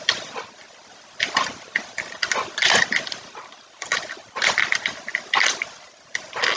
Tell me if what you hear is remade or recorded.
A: recorded